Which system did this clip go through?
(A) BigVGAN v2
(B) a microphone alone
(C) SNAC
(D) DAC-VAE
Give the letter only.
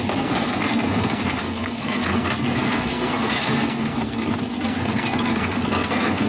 C